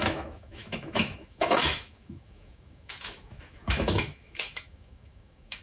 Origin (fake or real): fake